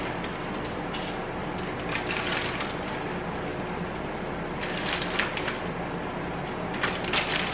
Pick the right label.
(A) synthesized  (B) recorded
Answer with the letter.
B